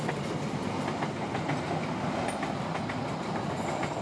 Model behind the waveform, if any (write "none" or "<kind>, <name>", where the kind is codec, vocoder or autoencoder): none